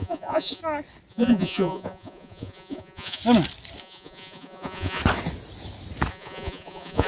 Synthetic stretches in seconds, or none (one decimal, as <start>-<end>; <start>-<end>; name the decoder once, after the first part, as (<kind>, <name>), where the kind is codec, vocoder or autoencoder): 0.0-0.6 (vocoder, Vocos); 1.1-3.2; 3.8-5.0; 6.1-7.1